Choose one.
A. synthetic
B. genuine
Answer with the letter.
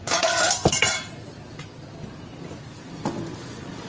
B